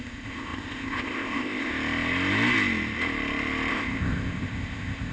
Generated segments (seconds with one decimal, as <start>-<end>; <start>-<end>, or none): 0.0-1.7; 3.7-5.1